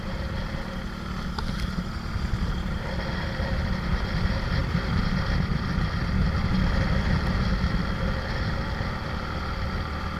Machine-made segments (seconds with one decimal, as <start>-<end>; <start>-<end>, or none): 4.6-5.3